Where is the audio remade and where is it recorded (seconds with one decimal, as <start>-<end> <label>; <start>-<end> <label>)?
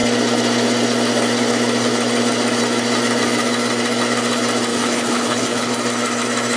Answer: 0.0-4.7 recorded; 4.7-5.7 remade; 5.7-6.6 recorded